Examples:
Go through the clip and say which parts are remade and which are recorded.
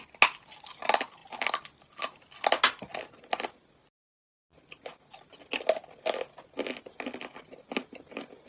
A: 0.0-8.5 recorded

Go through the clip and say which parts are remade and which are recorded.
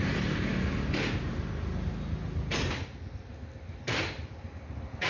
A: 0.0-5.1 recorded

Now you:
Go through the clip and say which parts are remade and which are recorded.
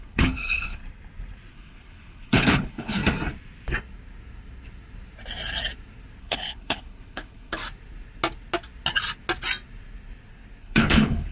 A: 0.0-0.8 remade; 0.8-1.5 recorded; 1.5-3.0 remade; 3.0-6.2 recorded; 6.2-7.6 remade; 7.6-10.6 recorded; 10.6-11.3 remade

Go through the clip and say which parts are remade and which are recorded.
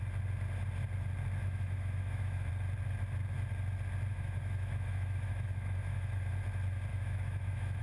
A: 0.0-1.4 recorded; 1.4-2.5 remade; 2.5-4.1 recorded; 4.1-6.3 remade; 6.3-6.9 recorded; 6.9-7.8 remade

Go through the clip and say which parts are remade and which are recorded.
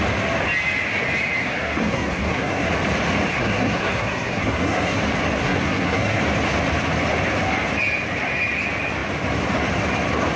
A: 0.0-1.4 recorded; 1.4-2.7 remade; 2.7-3.3 recorded; 3.3-5.0 remade; 5.0-5.4 recorded; 5.4-6.2 remade; 6.2-10.4 recorded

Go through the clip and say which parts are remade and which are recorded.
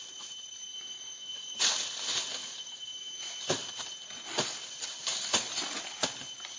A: 0.0-0.7 recorded; 0.7-1.6 remade; 1.6-2.4 recorded; 2.4-3.7 remade; 3.7-6.6 recorded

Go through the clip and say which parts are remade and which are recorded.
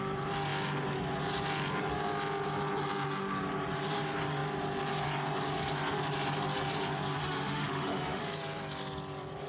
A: 0.0-7.2 recorded; 7.2-8.2 remade; 8.2-9.5 recorded